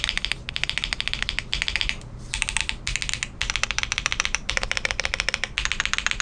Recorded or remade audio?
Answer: recorded